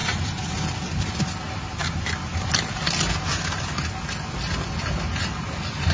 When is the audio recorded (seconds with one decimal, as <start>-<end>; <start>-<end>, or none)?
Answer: 0.0-5.9